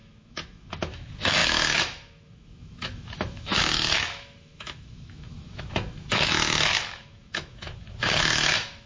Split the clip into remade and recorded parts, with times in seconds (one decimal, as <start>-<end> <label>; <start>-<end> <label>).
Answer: 0.0-8.9 remade